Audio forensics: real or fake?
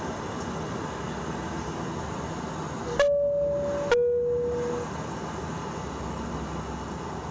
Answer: real